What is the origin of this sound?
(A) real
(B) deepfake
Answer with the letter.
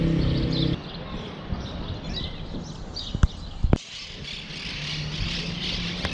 A